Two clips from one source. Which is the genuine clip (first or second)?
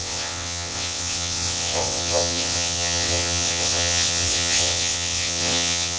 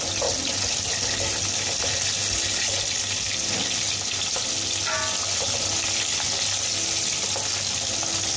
second